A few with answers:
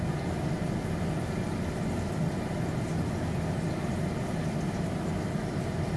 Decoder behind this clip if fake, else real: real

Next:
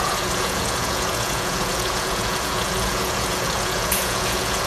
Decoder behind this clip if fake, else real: fake, vocoder, Vocos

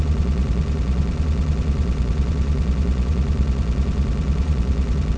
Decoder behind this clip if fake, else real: fake, vocoder, Vocos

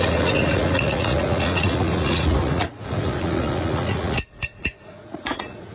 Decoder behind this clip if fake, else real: fake, vocoder, Vocos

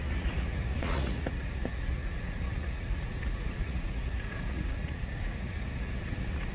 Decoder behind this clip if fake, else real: fake, vocoder, Vocos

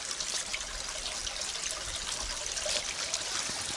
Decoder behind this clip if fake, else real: real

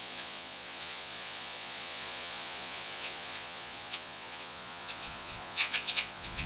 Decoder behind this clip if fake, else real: fake, vocoder, Vocos